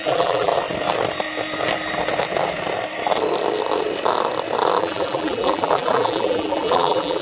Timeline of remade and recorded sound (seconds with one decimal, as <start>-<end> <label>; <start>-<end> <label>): 0.0-0.5 remade; 0.5-4.8 recorded; 4.8-7.2 remade